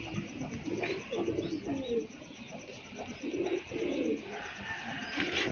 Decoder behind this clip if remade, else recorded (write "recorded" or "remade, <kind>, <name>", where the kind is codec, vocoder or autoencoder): recorded